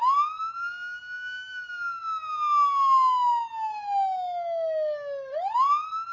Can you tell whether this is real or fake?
real